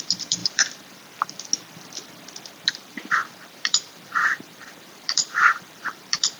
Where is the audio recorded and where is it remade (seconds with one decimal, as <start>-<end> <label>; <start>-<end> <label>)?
0.0-1.5 remade; 1.5-2.5 recorded; 2.5-6.4 remade